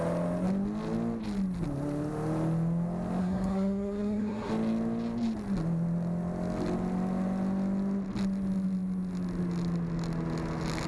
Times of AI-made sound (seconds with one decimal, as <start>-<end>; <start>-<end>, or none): 3.2-4.5